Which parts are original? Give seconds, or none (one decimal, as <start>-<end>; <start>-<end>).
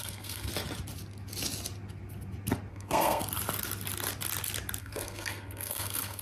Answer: 0.5-2.7; 3.2-4.8